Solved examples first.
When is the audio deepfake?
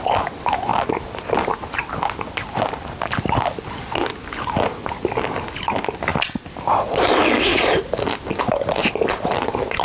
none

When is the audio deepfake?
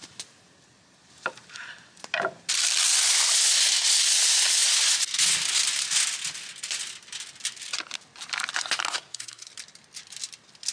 8.9-9.5 (codec, SNAC)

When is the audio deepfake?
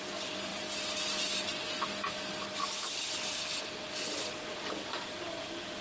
none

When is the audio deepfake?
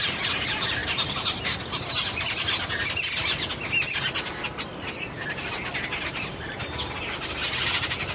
none